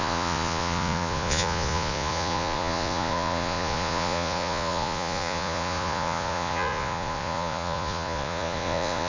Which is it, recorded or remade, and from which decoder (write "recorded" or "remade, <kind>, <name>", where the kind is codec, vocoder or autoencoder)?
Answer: remade, vocoder, Vocos